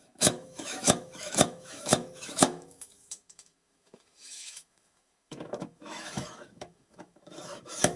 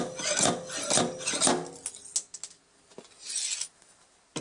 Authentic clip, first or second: second